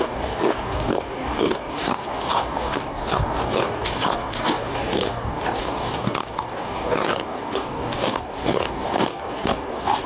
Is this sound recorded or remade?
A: remade